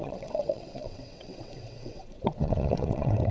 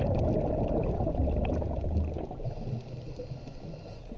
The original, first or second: second